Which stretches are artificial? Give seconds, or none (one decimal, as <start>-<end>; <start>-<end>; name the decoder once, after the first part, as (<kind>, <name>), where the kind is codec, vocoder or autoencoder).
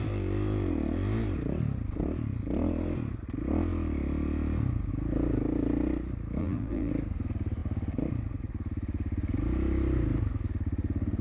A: 6.4-6.9 (vocoder, BigVGAN v2)